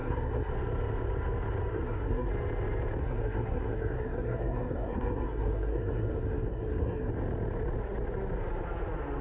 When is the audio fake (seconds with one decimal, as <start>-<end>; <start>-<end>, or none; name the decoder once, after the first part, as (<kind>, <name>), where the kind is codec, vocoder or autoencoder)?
0.0-0.5 (codec, SNAC); 1.7-2.3; 3.0-7.1